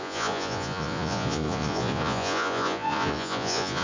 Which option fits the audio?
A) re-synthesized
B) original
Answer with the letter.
A